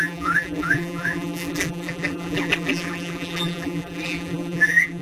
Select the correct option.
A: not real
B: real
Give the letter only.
A